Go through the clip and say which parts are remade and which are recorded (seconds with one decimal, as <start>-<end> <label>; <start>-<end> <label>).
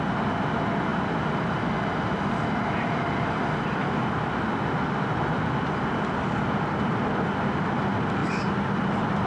0.0-8.2 recorded; 8.2-9.3 remade